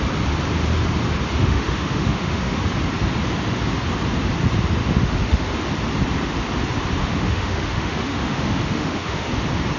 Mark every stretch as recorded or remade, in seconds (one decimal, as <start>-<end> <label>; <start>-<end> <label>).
0.0-1.4 recorded; 1.4-2.6 remade; 2.6-4.8 recorded; 4.8-5.5 remade; 5.5-7.0 recorded; 7.0-9.3 remade; 9.3-9.8 recorded